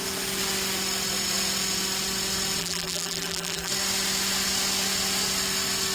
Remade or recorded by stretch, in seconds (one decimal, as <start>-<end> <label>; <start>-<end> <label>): 0.0-2.6 recorded; 2.6-3.7 remade; 3.7-5.9 recorded